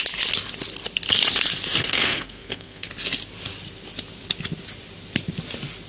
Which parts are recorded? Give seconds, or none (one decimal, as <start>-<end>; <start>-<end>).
0.0-1.8; 2.9-5.9